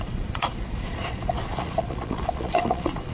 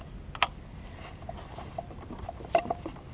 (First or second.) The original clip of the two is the second